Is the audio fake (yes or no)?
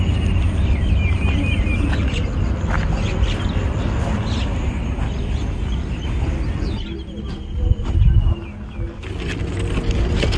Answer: no